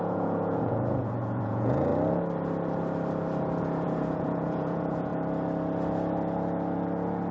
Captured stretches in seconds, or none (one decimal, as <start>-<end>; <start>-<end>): 1.9-3.6; 5.1-7.3